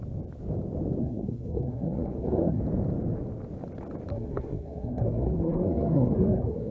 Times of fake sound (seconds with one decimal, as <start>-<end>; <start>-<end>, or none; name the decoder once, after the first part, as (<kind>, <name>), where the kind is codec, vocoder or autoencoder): 1.0-2.6 (codec, SNAC); 4.1-6.7